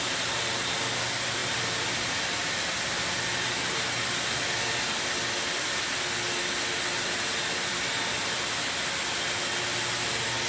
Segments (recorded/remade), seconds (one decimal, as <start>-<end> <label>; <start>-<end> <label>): 0.0-10.5 recorded